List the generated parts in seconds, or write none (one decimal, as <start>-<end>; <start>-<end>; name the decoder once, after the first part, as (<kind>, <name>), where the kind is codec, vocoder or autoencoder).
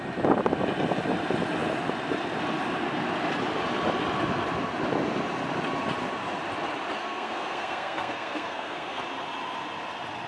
7.0-9.0 (codec, SNAC)